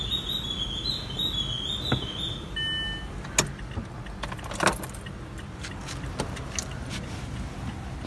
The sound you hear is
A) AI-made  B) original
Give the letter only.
B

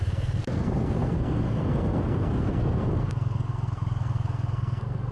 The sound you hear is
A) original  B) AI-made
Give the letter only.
B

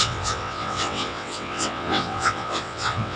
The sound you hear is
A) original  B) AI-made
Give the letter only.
B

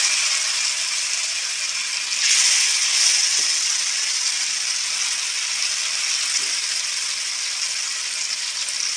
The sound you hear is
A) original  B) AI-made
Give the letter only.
A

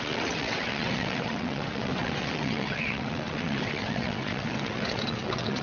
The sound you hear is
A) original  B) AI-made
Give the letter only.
B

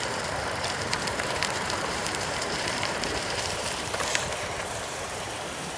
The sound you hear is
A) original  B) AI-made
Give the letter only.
B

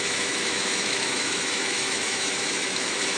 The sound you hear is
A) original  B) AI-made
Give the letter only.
B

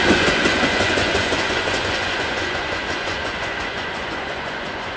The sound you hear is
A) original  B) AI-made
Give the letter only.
B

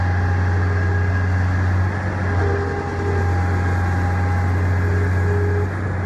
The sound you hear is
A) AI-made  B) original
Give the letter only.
B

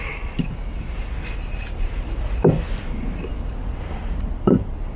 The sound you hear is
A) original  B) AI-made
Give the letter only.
A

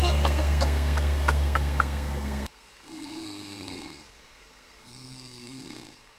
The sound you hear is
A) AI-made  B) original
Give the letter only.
A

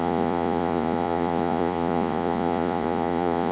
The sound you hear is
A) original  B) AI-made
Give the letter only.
B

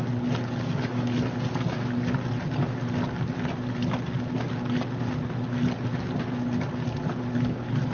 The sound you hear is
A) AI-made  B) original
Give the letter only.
B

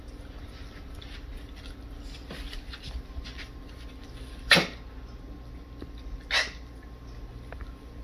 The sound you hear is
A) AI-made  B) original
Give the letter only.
B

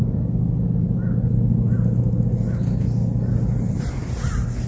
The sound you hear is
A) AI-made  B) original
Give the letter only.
B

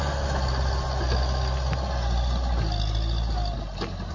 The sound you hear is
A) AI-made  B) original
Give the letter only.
B